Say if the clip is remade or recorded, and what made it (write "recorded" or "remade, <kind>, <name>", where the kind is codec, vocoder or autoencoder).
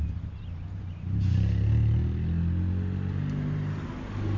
recorded